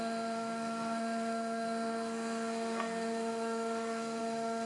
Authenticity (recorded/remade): remade